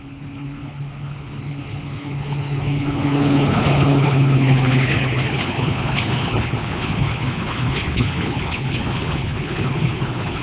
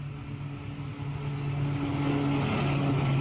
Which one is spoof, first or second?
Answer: first